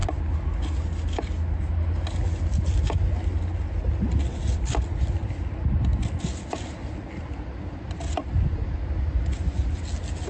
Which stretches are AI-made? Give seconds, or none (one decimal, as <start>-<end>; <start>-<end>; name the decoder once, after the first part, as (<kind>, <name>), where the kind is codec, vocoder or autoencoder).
none